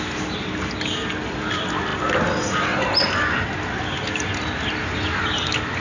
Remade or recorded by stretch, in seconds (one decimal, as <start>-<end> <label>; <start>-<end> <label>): 0.0-5.8 recorded